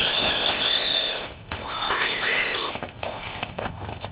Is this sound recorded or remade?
remade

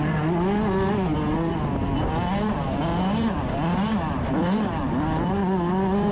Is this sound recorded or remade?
recorded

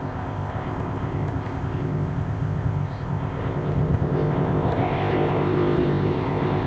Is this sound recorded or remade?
remade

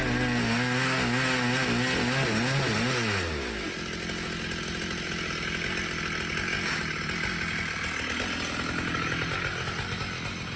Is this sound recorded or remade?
recorded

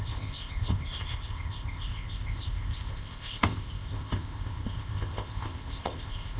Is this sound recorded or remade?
remade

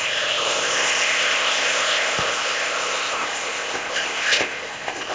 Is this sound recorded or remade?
remade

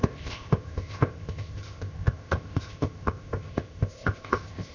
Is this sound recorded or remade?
remade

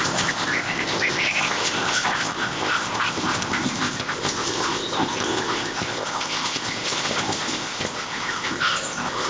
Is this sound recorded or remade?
remade